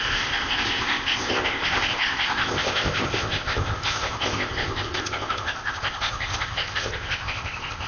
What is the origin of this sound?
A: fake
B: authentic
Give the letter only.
A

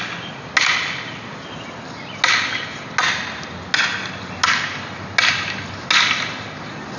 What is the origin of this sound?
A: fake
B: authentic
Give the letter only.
B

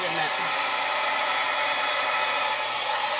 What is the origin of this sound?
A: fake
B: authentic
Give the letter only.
B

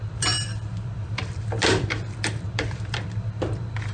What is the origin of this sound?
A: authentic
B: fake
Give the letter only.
B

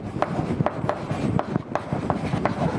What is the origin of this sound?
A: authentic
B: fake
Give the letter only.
A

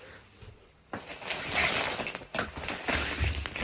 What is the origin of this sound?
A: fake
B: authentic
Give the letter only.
B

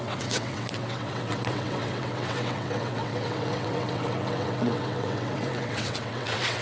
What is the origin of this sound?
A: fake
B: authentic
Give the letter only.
A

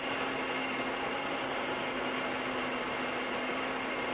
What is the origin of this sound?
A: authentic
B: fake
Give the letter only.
A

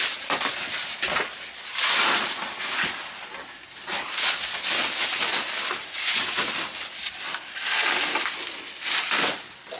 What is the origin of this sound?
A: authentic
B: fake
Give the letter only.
A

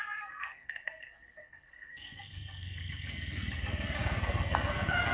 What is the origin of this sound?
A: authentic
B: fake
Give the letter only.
B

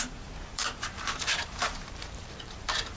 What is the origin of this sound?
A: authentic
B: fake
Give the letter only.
B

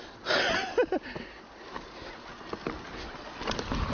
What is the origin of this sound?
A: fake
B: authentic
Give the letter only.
B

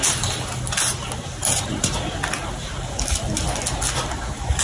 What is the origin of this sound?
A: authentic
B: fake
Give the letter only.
A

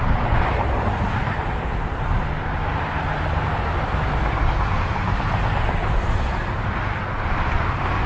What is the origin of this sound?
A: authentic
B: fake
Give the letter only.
A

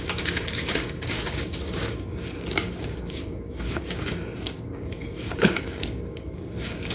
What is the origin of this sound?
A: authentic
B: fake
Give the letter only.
B